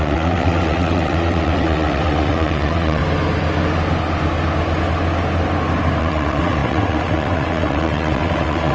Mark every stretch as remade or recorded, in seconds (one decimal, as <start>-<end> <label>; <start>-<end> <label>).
0.0-3.0 remade; 3.0-6.0 recorded; 6.0-8.7 remade